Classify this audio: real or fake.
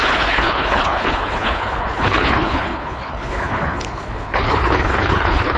fake